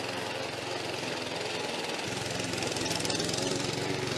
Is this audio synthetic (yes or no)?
yes